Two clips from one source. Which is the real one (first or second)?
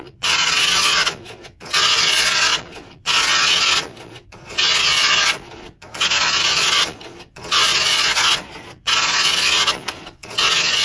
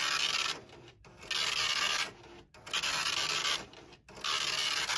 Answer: second